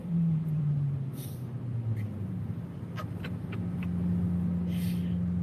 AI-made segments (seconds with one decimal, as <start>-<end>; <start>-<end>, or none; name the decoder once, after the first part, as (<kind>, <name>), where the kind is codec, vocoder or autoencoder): 0.0-0.7 (vocoder, BigVGAN v2)